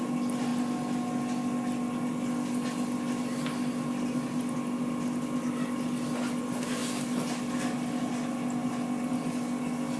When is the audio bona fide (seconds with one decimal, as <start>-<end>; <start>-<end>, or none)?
0.0-10.0